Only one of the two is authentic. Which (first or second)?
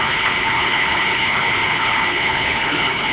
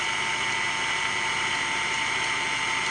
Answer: second